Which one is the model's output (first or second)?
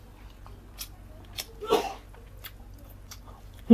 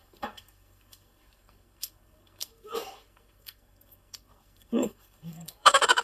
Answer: second